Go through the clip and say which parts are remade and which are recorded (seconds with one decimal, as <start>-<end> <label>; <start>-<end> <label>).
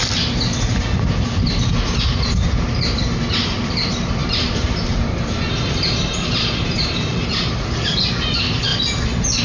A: 0.0-4.2 recorded; 4.2-8.1 remade; 8.1-9.4 recorded